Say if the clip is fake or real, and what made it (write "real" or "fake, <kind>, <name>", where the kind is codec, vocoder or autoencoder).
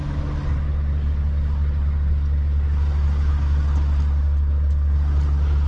real